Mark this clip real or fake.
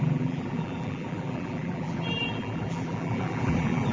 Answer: fake